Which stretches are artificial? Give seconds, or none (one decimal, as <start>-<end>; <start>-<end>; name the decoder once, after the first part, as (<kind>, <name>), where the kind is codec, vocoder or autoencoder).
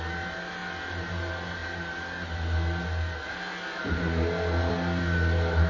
none